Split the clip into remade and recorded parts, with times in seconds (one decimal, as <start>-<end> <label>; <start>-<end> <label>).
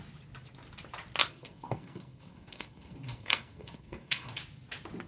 0.0-1.3 recorded; 1.3-4.4 remade; 4.4-5.1 recorded